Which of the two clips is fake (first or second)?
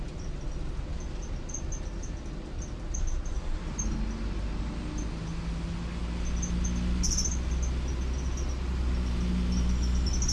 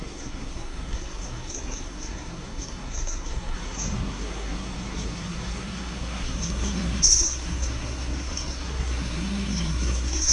second